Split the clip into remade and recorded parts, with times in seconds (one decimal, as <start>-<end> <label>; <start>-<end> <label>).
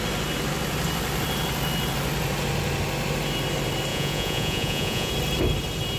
0.0-3.9 recorded; 3.9-5.1 remade; 5.1-6.0 recorded